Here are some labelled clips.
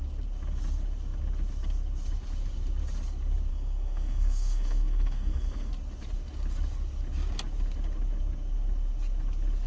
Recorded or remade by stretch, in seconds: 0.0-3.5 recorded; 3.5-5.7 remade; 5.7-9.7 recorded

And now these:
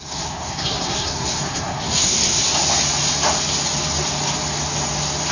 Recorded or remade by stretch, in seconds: 0.0-2.4 remade; 2.4-5.3 recorded

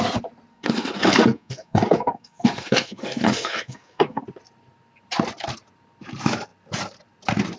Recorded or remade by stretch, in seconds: 0.0-0.5 recorded; 0.5-4.2 remade; 4.2-7.6 recorded

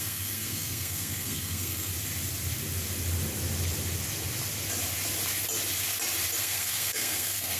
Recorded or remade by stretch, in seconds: 0.0-1.9 remade; 1.9-6.4 recorded; 6.4-7.6 remade

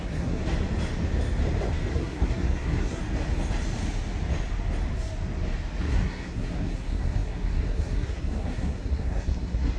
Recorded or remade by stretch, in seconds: 0.0-0.4 remade; 0.4-1.9 recorded; 1.9-3.0 remade; 3.0-5.8 recorded; 5.8-9.8 remade